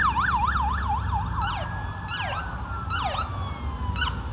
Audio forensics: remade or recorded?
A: recorded